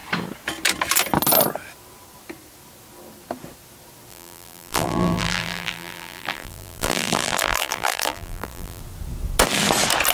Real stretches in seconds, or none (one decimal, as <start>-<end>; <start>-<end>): 0.0-4.1; 8.8-10.1